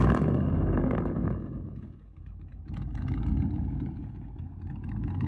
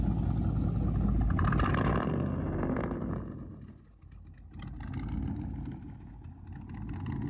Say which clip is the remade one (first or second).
first